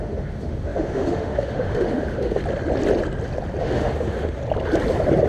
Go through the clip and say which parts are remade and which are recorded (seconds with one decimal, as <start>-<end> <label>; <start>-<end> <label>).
0.0-2.4 remade; 2.4-3.6 recorded; 3.6-4.4 remade; 4.4-5.3 recorded

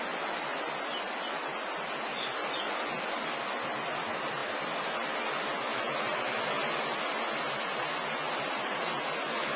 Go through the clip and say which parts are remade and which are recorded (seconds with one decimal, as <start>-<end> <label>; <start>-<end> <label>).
0.0-9.6 recorded

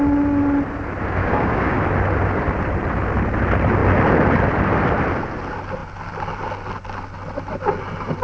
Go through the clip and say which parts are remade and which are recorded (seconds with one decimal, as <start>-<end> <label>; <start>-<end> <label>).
0.0-1.2 recorded; 1.2-1.8 remade; 1.8-8.2 recorded

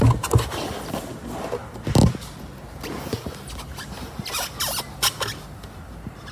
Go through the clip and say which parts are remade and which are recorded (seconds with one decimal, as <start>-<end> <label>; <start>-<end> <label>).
0.0-6.3 recorded

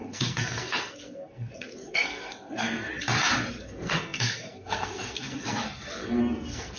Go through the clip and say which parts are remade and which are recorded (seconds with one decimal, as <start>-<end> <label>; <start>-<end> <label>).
0.0-2.9 remade; 2.9-3.5 recorded; 3.5-6.8 remade